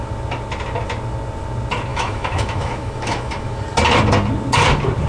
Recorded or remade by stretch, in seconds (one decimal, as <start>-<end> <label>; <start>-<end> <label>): 0.0-1.9 recorded; 1.9-3.6 remade; 3.6-5.1 recorded